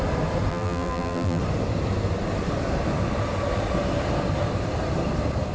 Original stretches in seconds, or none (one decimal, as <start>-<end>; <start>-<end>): 0.0-0.5; 1.4-5.5